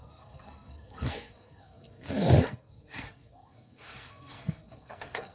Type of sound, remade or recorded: remade